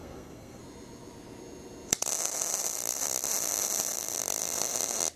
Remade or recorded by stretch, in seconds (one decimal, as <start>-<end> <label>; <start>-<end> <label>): 0.0-0.6 remade; 0.6-5.2 recorded